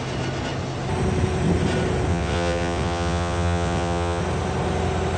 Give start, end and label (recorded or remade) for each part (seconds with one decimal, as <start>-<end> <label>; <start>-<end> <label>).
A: 0.0-2.1 recorded; 2.1-4.2 remade; 4.2-5.2 recorded